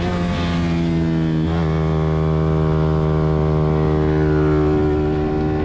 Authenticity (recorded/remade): recorded